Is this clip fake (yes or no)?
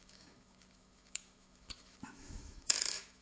yes